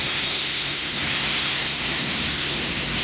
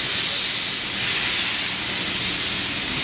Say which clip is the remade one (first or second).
first